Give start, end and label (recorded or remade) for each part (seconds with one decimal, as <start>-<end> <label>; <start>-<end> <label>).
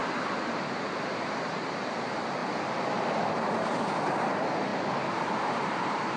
0.0-2.4 remade; 2.4-3.3 recorded; 3.3-6.2 remade